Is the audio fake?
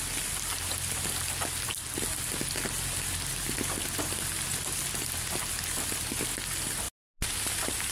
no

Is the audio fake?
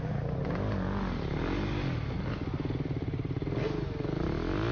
no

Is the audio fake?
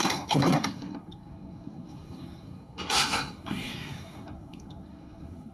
yes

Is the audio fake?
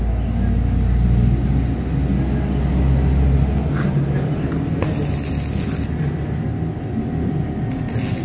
no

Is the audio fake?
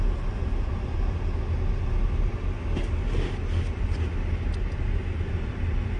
no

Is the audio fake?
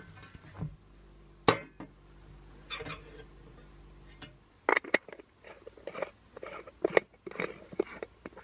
no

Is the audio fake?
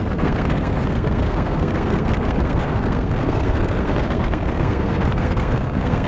yes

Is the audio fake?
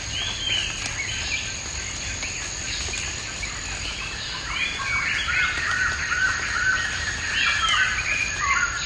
no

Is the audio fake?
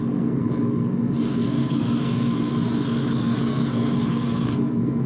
yes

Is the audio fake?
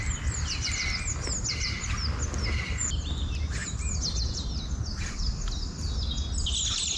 no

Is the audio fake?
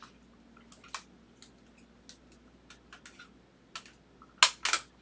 no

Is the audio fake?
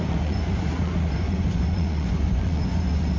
yes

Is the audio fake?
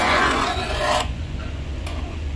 yes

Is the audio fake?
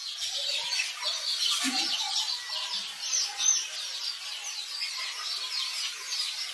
yes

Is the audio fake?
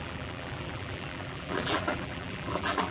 yes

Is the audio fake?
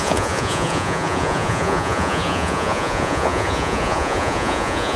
yes